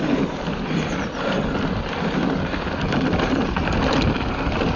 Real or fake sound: real